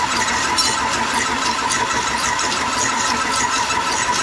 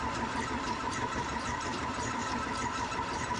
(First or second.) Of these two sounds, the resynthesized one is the second